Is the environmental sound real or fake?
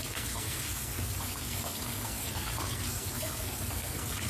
fake